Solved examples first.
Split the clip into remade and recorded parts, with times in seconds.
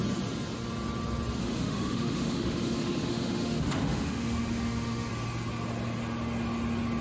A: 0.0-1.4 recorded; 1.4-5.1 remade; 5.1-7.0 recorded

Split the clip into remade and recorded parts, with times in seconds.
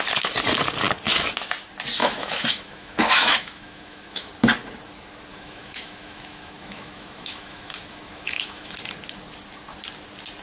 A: 0.0-2.0 recorded; 2.0-4.3 remade; 4.3-5.3 recorded; 5.3-8.7 remade; 8.7-10.4 recorded